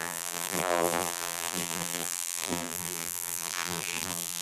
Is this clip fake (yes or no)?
yes